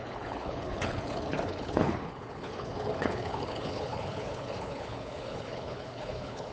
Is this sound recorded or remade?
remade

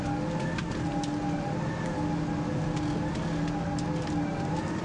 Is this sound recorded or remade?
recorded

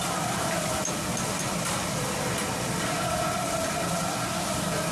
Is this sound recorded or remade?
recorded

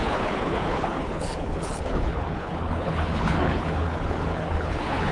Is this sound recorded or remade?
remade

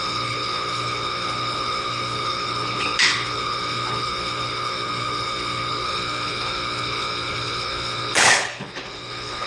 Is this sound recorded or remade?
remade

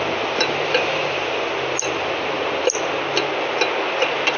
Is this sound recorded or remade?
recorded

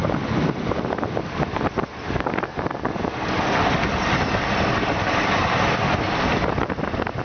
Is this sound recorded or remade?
recorded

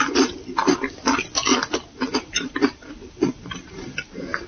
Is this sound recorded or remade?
recorded